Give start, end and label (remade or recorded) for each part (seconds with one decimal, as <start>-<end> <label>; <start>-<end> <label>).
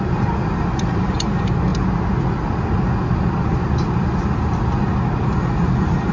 0.0-6.1 recorded